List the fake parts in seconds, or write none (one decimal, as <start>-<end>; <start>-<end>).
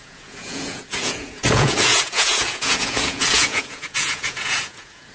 0.0-5.1